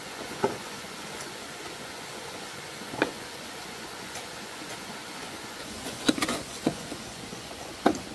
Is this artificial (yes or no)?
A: yes